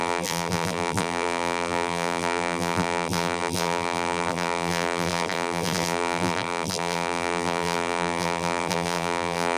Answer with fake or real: fake